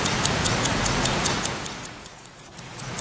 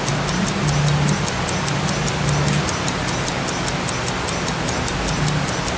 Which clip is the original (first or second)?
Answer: second